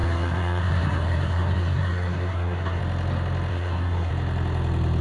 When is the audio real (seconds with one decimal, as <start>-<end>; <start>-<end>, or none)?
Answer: 2.8-3.5; 4.1-5.0